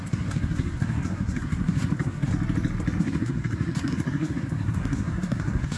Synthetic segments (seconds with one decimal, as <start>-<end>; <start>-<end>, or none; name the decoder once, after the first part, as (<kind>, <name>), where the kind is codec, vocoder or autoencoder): 0.0-2.3 (codec, SNAC); 3.0-5.8